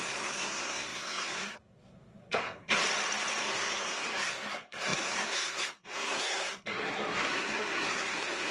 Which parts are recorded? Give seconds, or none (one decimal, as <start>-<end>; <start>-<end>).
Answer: 2.8-3.4